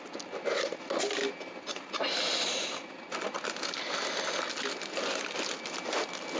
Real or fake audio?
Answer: real